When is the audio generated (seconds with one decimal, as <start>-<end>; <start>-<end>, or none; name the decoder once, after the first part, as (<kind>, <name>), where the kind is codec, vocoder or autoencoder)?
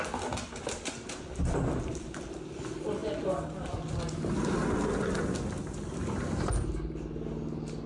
none